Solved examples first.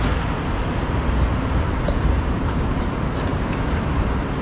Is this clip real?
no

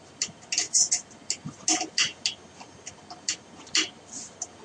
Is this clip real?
yes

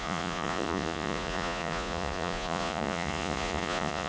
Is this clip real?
no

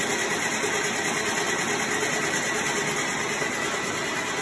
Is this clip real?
yes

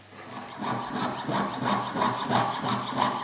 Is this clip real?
yes